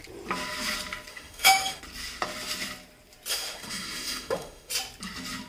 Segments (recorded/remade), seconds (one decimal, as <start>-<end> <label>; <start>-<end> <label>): 0.0-1.1 recorded; 1.1-1.8 remade; 1.8-3.3 recorded; 3.3-4.7 remade; 4.7-5.5 recorded